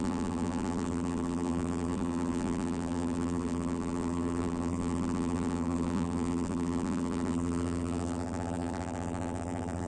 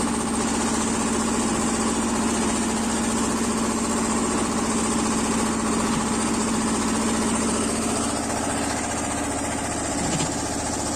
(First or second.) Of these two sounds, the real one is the second